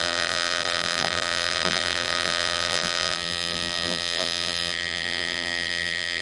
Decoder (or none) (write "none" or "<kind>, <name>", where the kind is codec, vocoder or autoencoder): vocoder, BigVGAN v2